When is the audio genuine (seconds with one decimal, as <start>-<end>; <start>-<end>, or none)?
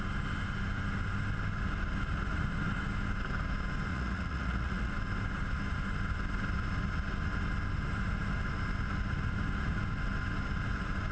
0.0-3.9; 4.9-11.1